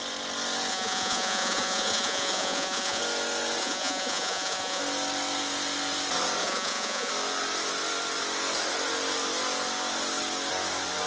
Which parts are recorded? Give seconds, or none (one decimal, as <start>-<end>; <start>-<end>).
0.0-0.7; 3.0-3.6; 4.8-6.4; 7.1-11.1